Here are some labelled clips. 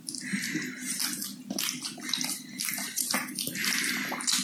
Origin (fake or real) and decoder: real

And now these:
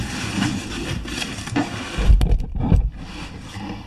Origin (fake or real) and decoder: real